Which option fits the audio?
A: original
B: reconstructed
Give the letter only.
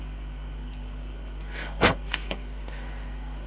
B